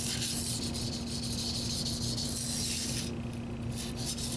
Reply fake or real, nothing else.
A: real